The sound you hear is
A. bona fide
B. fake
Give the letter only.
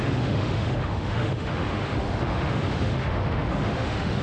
B